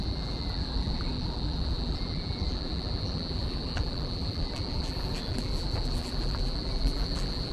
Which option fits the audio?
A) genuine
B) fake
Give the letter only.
B